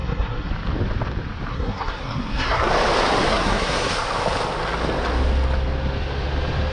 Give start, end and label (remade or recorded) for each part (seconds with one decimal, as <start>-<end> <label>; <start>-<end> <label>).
0.0-0.5 remade; 0.5-1.5 recorded; 1.5-2.7 remade; 2.7-3.3 recorded; 3.3-3.9 remade; 3.9-6.7 recorded